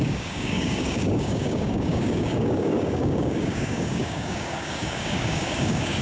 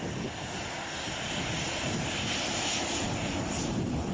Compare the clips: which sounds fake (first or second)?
first